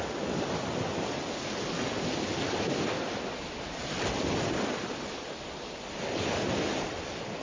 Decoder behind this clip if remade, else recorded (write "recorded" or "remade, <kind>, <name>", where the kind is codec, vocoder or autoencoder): recorded